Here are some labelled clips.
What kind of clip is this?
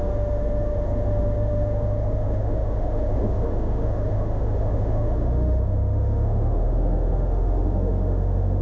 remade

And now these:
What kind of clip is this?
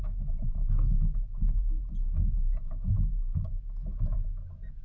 remade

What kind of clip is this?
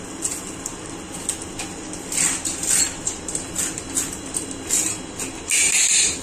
recorded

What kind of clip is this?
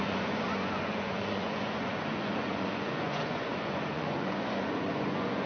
remade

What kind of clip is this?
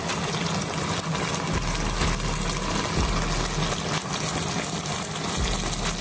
recorded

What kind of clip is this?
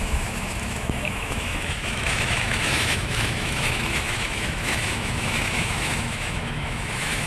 remade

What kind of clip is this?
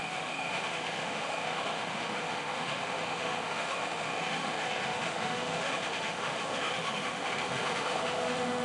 remade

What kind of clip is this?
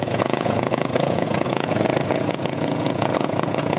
remade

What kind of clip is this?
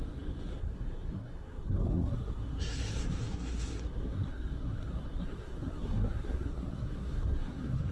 remade